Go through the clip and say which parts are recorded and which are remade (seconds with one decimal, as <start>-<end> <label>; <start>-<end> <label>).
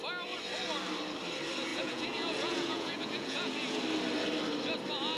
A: 0.0-1.7 recorded; 1.7-3.8 remade; 3.8-5.2 recorded